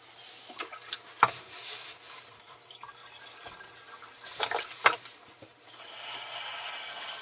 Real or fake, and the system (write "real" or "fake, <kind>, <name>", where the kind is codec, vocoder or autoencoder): real